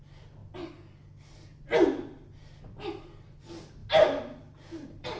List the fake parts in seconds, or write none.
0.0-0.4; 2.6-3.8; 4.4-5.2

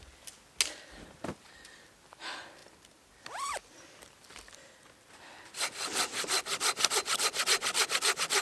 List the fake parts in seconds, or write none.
none

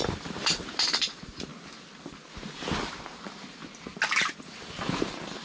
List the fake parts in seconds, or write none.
0.0-1.5; 2.8-3.6; 4.4-5.4

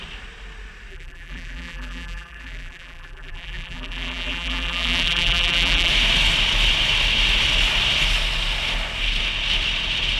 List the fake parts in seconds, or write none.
0.9-5.9

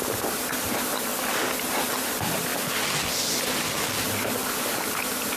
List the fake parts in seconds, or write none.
1.1-1.9; 4.4-5.4

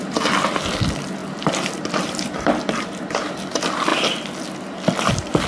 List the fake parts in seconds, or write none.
none

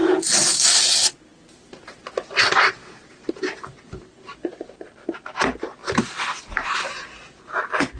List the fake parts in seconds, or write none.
1.3-2.4; 2.8-5.3